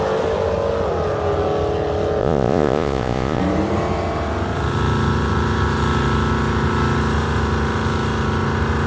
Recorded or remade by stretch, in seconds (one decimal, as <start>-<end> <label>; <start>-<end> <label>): 0.0-2.2 recorded; 2.2-3.4 remade; 3.4-8.9 recorded